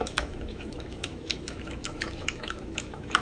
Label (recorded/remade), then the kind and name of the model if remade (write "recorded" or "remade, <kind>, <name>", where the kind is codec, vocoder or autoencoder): remade, autoencoder, DAC-VAE